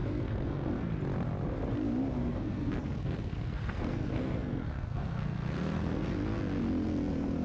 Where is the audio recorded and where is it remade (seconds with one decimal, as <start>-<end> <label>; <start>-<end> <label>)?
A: 0.0-0.9 remade; 0.9-2.3 recorded; 2.3-6.1 remade; 6.1-7.4 recorded